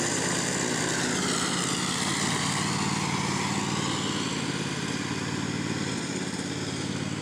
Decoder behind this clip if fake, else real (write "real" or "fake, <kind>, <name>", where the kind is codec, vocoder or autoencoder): real